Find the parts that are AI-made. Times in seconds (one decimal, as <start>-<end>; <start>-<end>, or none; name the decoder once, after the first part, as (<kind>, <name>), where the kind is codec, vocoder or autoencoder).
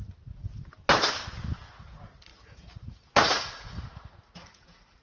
1.7-5.0 (vocoder, Vocos)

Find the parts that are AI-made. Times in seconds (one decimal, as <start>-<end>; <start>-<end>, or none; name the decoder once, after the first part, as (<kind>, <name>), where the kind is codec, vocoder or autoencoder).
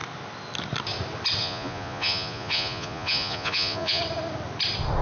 1.4-4.0 (vocoder, Vocos)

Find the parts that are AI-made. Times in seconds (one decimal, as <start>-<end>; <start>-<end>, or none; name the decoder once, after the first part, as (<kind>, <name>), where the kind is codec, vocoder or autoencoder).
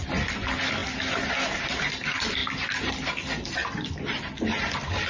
3.6-4.3 (vocoder, BigVGAN v2)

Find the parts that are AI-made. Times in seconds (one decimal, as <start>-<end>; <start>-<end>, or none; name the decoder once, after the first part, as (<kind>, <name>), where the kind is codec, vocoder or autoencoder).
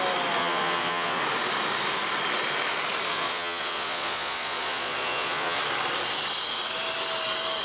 0.4-1.2 (vocoder, Vocos); 3.1-5.6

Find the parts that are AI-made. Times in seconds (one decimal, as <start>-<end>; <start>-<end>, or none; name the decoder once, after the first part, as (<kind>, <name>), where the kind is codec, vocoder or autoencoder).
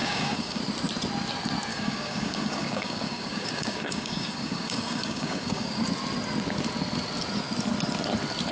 0.0-0.6 (codec, DAC); 1.7-5.8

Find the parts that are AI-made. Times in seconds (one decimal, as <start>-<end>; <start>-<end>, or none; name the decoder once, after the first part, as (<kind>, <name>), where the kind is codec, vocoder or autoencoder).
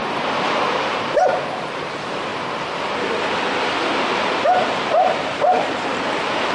0.5-2.3 (vocoder, BigVGAN v2); 4.1-6.5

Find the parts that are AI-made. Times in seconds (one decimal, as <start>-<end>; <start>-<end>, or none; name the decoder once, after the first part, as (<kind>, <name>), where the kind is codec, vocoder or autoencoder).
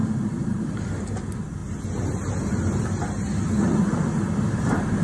none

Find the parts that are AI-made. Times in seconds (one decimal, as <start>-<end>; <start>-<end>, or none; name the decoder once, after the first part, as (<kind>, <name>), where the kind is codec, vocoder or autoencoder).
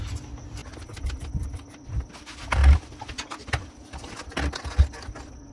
none